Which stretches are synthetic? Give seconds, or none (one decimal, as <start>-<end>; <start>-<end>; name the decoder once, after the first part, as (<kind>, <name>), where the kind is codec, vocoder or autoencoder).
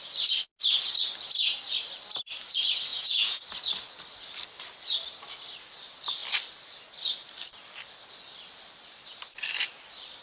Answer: 2.9-3.4 (vocoder, Vocos)